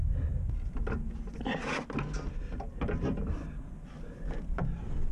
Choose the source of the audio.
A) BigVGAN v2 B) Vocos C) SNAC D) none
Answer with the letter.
D